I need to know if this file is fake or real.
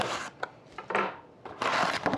real